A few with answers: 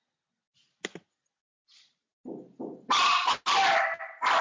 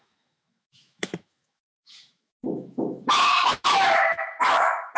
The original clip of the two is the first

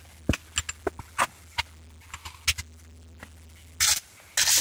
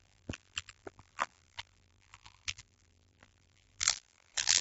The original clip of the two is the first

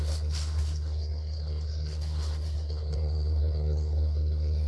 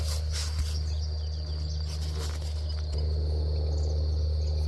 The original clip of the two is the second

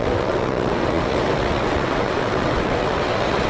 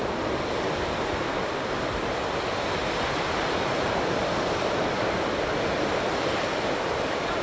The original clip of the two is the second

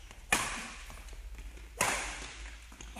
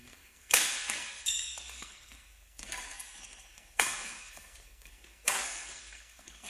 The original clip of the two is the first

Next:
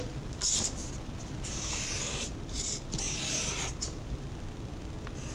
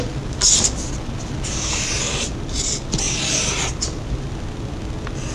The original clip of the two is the second